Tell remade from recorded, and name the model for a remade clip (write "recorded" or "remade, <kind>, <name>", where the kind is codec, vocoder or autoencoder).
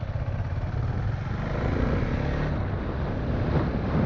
recorded